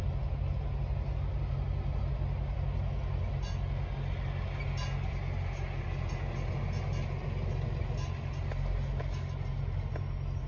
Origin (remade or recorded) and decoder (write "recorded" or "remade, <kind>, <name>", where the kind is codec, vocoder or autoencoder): recorded